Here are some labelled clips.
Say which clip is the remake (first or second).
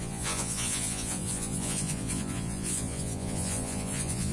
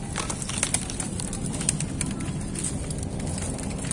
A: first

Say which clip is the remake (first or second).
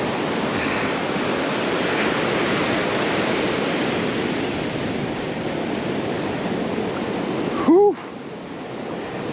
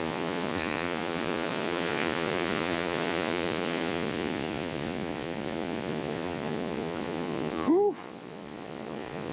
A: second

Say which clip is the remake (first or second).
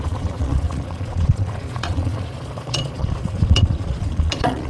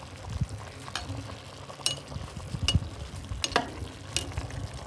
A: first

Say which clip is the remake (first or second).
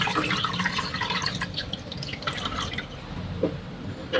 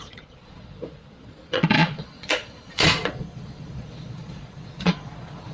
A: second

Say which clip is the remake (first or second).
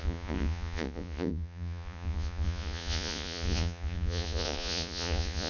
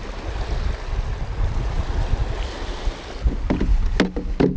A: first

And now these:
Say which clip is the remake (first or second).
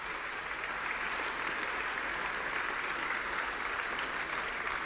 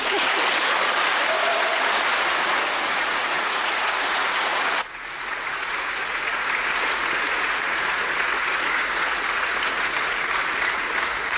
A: second